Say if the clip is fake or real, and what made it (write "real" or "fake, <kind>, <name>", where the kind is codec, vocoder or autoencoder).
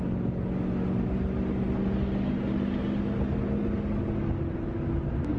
real